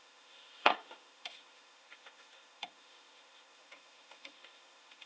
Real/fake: fake